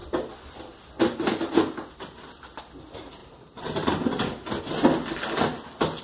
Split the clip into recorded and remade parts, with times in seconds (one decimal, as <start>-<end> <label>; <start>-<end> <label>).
0.0-3.2 recorded; 3.2-4.6 remade; 4.6-6.0 recorded